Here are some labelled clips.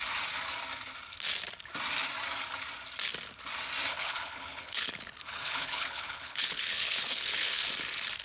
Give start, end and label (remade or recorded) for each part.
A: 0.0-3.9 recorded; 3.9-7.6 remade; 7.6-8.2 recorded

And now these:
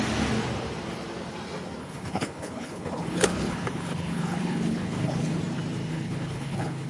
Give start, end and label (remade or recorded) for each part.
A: 0.0-1.8 recorded; 1.8-5.4 remade; 5.4-5.9 recorded; 5.9-6.9 remade

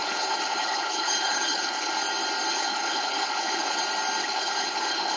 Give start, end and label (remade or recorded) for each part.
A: 0.0-1.9 remade; 1.9-2.5 recorded; 2.5-3.8 remade; 3.8-4.2 recorded; 4.2-5.2 remade